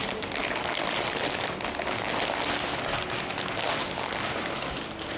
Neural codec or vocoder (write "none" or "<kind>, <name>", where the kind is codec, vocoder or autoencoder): none